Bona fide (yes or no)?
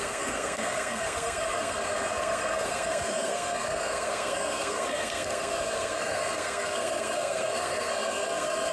no